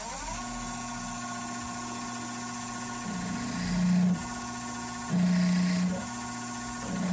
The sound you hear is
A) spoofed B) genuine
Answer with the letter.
B